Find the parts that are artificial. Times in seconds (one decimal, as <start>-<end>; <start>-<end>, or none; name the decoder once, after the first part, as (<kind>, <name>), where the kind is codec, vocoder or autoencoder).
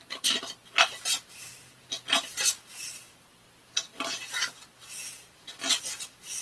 none